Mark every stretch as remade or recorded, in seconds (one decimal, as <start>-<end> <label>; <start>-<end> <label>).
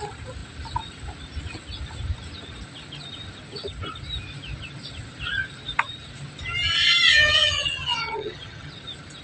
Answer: 0.0-7.1 recorded; 7.1-8.7 remade; 8.7-9.2 recorded